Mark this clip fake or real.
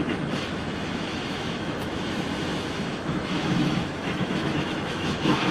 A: fake